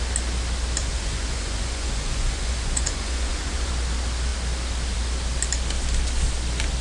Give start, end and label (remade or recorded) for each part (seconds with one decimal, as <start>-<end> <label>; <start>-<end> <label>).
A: 0.0-0.8 recorded; 0.8-3.7 remade; 3.7-6.8 recorded